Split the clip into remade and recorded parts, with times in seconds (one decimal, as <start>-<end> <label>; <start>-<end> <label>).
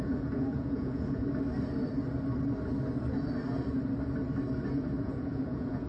0.0-1.2 remade; 1.2-4.7 recorded; 4.7-5.9 remade